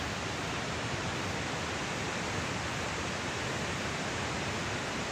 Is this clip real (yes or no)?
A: yes